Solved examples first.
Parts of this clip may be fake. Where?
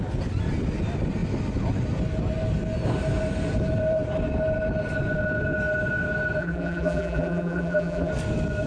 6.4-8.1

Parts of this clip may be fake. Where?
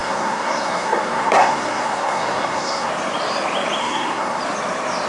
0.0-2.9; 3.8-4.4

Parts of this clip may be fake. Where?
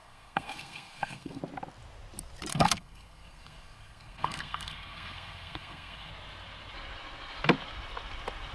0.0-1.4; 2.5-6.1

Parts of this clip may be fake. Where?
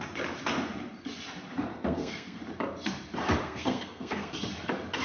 1.7-2.4; 3.4-4.4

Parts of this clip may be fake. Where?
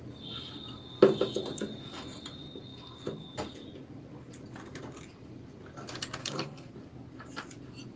6.2-6.7